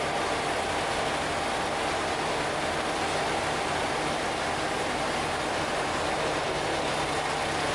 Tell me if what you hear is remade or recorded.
recorded